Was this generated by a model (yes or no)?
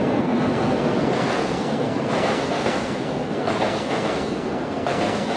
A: yes